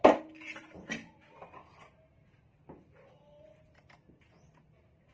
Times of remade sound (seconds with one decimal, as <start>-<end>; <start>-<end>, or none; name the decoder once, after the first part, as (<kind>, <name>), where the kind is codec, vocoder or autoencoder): none